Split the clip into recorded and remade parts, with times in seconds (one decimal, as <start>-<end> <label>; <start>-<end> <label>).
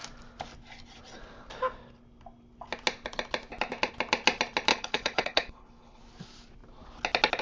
0.0-4.7 recorded; 4.7-6.0 remade; 6.0-7.4 recorded